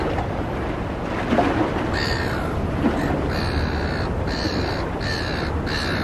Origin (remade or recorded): recorded